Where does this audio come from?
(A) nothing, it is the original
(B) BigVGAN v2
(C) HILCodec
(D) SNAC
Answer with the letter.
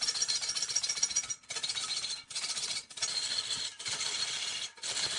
A